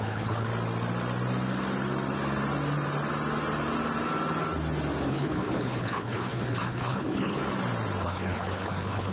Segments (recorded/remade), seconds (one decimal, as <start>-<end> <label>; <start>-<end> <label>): 0.0-0.5 remade; 0.5-5.1 recorded; 5.1-7.4 remade; 7.4-8.0 recorded; 8.0-9.1 remade